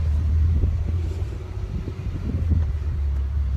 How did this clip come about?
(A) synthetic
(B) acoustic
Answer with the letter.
A